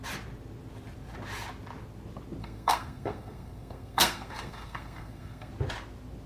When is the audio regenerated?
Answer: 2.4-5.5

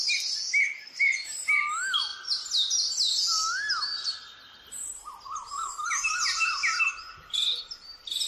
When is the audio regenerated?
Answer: none

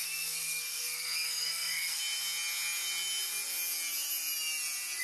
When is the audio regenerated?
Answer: 0.0-2.0